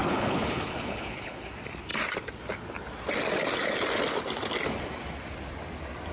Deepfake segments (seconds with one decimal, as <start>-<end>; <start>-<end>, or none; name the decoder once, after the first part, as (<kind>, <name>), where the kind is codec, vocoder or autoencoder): 0.0-1.5 (codec, HILCodec)